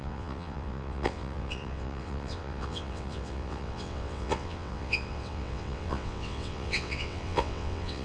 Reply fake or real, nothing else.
fake